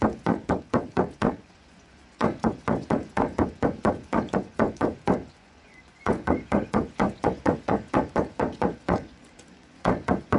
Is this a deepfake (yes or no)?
yes